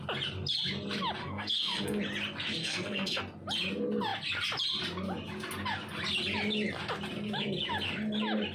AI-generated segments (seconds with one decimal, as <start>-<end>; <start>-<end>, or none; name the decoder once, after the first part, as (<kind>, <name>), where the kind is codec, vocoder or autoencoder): 1.2-2.0 (codec, SNAC); 2.6-3.2